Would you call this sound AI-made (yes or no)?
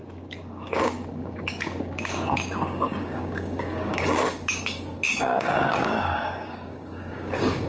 yes